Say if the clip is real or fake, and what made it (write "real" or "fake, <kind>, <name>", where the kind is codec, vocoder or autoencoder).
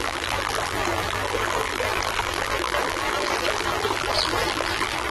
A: fake, vocoder, BigVGAN v2